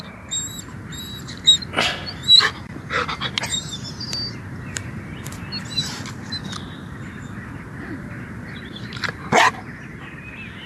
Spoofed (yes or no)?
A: no